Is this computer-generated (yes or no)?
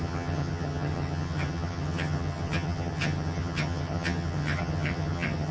yes